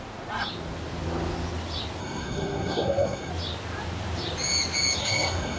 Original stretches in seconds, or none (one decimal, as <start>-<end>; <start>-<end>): 0.0-2.0; 3.3-5.0

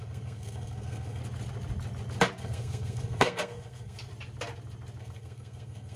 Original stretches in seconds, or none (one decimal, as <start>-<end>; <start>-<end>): 1.2-2.4; 4.1-5.0

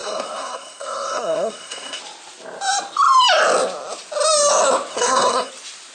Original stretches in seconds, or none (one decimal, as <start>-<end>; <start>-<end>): 2.0-4.9; 5.5-5.9

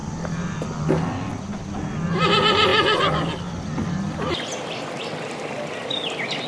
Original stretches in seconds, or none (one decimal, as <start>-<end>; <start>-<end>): 0.0-6.5

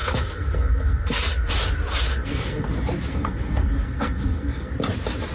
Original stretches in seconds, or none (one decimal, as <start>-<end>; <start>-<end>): 1.5-2.1; 2.7-3.1; 4.7-5.3

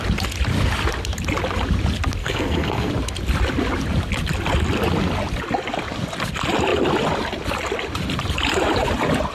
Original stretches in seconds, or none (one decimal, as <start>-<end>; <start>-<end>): 0.0-2.2; 2.9-9.3

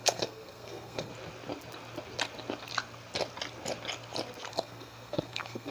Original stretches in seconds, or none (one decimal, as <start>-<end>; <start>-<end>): 1.1-4.5